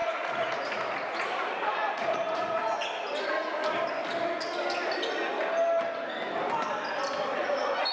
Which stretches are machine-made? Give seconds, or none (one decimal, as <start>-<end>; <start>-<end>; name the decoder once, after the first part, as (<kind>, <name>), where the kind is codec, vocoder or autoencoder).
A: 0.0-2.6 (vocoder, Vocos); 7.3-7.9